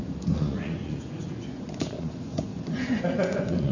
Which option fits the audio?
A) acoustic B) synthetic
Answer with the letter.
B